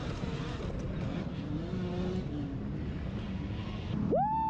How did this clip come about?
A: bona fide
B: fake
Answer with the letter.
A